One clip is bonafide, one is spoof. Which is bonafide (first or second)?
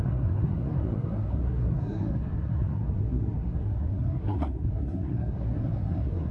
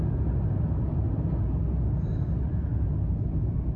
second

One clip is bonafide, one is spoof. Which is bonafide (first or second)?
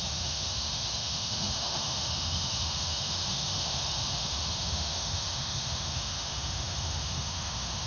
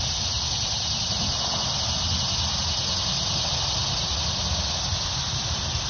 second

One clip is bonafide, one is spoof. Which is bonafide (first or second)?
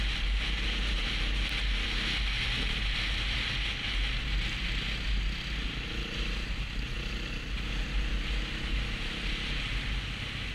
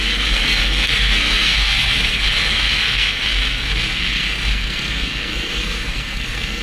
first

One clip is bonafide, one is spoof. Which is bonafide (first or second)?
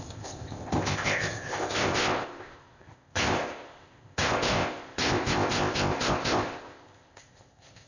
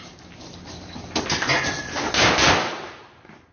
second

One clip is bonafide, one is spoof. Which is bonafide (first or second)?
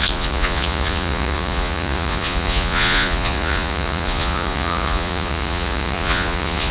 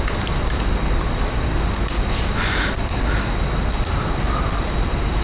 second